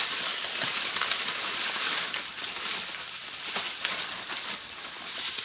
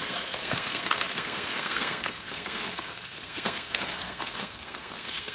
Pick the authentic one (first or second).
first